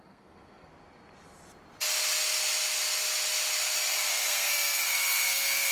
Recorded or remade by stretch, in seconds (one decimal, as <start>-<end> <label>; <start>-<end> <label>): 0.0-0.7 remade; 0.7-4.1 recorded; 4.1-5.7 remade